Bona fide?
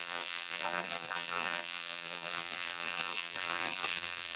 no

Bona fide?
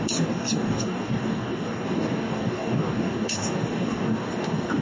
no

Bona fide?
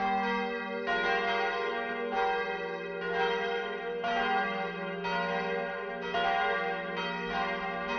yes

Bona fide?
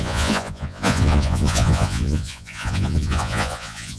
no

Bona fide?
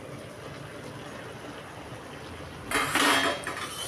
yes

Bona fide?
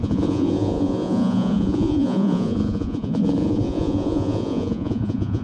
no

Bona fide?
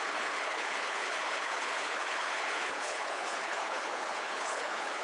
no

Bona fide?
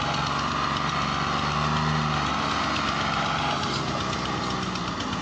yes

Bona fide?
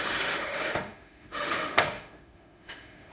no